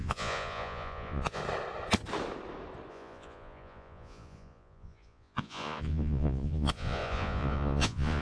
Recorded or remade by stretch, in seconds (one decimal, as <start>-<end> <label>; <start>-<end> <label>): 0.0-1.4 remade; 1.4-2.9 recorded; 2.9-8.2 remade